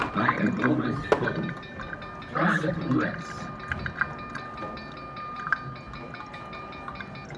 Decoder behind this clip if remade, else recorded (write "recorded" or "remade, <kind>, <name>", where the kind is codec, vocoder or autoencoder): recorded